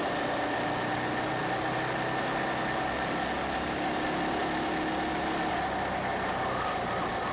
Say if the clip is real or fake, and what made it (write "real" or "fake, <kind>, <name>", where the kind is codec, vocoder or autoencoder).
real